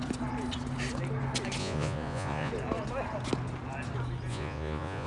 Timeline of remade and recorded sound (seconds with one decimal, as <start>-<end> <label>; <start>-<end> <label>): 0.0-1.6 recorded; 1.6-2.5 remade; 2.5-4.3 recorded; 4.3-5.1 remade